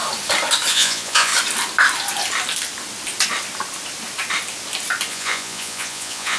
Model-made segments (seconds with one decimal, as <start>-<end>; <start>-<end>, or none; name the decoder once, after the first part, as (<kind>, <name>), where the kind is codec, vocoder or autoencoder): 0.7-1.3 (vocoder, Vocos); 5.1-6.4